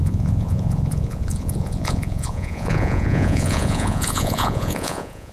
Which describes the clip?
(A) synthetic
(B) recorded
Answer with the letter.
A